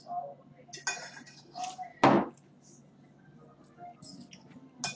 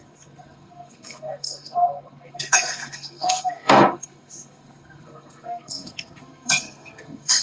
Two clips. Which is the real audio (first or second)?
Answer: first